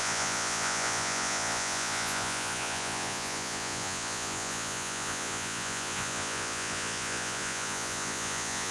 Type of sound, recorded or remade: remade